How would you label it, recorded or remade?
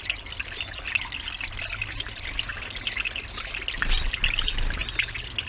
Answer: recorded